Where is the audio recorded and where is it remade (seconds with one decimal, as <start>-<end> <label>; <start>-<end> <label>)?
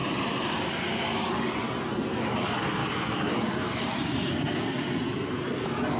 0.0-0.6 remade; 0.6-2.8 recorded; 2.8-4.3 remade; 4.3-6.0 recorded